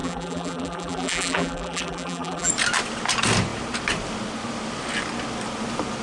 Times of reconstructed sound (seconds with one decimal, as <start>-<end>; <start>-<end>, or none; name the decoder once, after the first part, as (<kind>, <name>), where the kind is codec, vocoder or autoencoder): 0.0-2.5 (vocoder, BigVGAN v2)